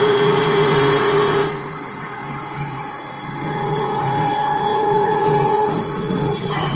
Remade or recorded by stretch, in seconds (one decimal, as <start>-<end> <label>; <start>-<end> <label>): 0.0-6.8 remade